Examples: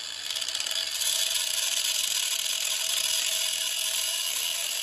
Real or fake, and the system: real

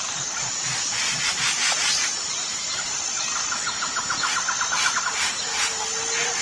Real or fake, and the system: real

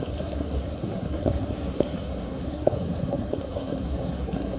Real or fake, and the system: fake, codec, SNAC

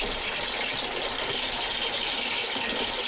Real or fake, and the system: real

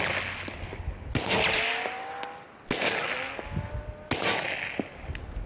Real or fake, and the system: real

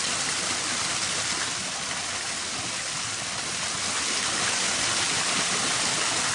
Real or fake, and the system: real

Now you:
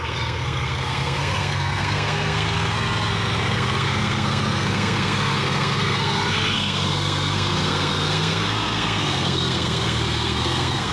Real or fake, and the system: fake, codec, SNAC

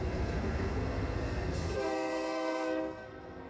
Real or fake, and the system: fake, codec, SNAC